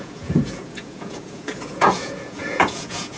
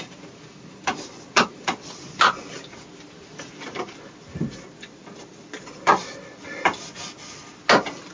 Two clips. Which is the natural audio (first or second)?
second